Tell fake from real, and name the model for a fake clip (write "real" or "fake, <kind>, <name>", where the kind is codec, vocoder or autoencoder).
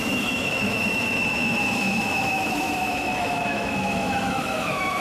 fake, autoencoder, DAC-VAE